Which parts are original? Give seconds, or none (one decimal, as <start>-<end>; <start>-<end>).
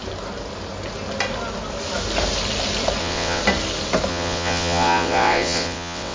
0.0-3.0; 3.4-4.1